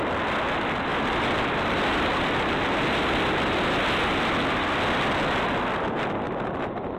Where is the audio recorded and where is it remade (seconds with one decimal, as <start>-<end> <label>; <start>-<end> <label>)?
0.0-0.9 recorded; 0.9-2.1 remade; 2.1-7.0 recorded